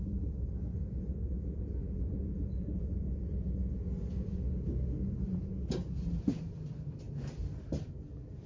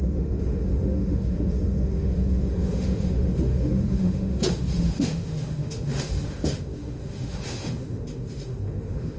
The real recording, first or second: first